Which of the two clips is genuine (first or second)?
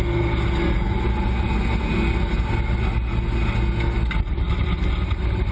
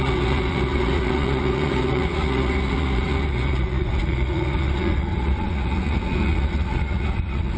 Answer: first